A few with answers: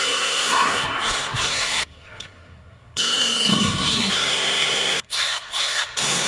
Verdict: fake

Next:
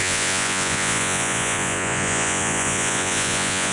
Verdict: fake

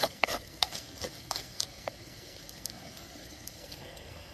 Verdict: fake